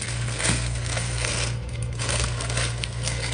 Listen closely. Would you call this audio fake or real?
fake